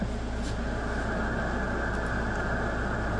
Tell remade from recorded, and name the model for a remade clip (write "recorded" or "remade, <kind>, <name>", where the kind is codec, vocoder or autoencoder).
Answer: recorded